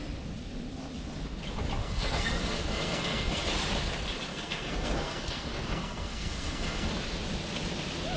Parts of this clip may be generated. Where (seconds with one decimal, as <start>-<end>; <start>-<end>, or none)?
1.8-3.5; 4.3-6.9